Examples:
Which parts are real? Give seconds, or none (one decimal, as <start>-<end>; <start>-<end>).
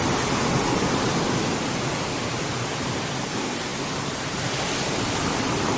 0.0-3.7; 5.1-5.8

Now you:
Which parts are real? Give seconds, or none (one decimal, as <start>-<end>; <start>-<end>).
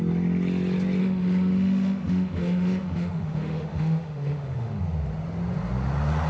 0.0-1.0; 4.8-6.3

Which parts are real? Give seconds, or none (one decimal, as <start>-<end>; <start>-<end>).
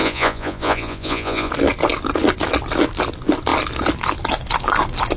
1.5-5.2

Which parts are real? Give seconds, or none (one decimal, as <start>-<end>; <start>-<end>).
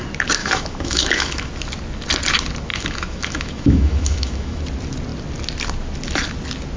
0.0-0.4; 1.5-2.7; 4.6-6.8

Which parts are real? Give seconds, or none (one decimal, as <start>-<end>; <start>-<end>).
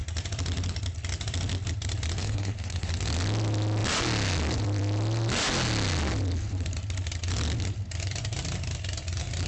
0.0-2.2; 2.9-9.5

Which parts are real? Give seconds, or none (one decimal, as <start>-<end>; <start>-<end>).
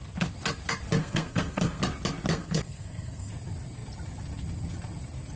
0.0-1.0; 1.8-2.3; 3.3-5.4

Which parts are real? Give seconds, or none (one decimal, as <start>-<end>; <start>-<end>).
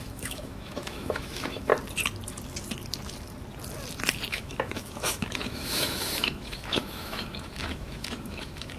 1.7-4.3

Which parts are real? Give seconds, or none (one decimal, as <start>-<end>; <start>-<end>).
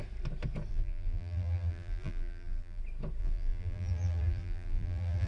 0.0-0.7; 2.8-3.2